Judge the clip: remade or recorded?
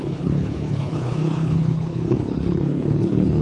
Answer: remade